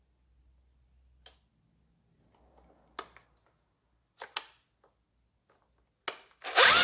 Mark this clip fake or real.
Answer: real